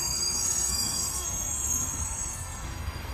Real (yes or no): no